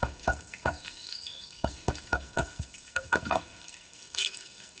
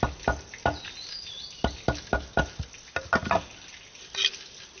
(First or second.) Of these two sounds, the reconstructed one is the first